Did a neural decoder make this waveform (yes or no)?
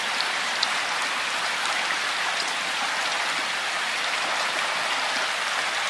no